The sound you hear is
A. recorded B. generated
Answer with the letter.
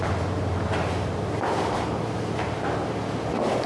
B